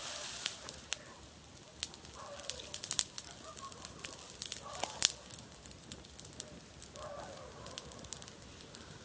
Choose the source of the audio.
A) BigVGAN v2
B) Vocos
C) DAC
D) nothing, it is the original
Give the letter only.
D